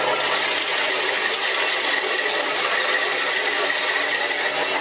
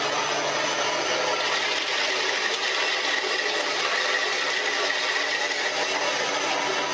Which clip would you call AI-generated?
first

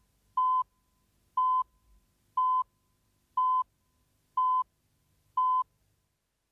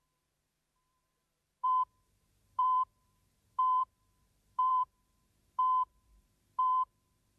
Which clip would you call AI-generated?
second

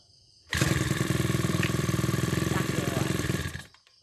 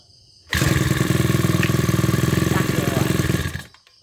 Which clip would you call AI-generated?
first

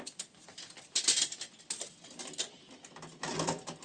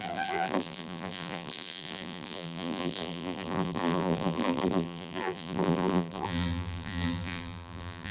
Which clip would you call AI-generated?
second